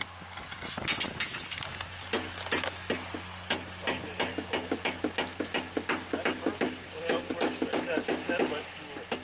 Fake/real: real